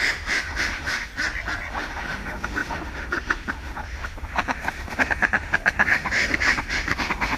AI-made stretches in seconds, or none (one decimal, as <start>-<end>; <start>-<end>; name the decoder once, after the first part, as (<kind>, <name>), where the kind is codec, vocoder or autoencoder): 0.0-1.1 (autoencoder, DAC-VAE); 1.7-7.4